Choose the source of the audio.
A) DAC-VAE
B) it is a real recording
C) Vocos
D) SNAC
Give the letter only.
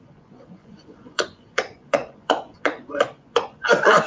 C